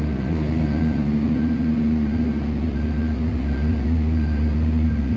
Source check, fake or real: fake